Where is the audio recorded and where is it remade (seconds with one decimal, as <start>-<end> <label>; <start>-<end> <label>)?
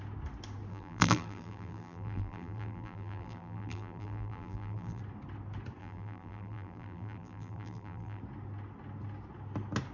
0.0-0.7 recorded; 0.7-5.0 remade; 5.0-5.8 recorded; 5.8-8.2 remade; 8.2-9.9 recorded